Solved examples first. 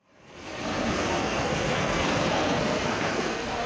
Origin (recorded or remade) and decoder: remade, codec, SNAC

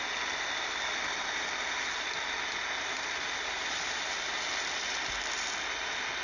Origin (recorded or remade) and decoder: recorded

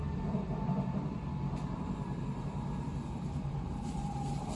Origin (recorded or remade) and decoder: remade, vocoder, BigVGAN v2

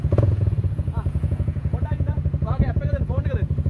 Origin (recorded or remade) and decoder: remade, vocoder, Vocos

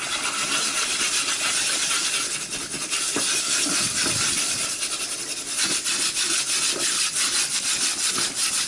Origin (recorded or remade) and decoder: recorded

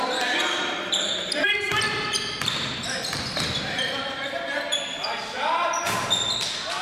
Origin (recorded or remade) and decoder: remade, vocoder, BigVGAN v2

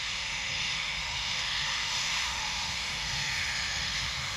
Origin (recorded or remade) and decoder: remade, autoencoder, DAC-VAE